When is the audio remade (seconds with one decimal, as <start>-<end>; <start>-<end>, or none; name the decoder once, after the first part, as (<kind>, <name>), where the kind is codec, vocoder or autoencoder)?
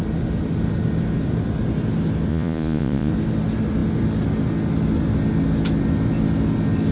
2.3-3.1 (vocoder, Vocos)